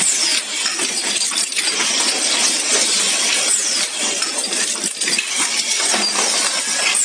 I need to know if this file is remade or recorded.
remade